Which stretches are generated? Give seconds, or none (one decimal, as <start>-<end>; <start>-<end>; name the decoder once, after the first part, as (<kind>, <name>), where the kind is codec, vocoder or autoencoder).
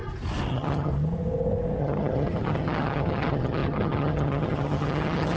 0.5-0.9 (vocoder, HiFi-GAN); 1.8-5.4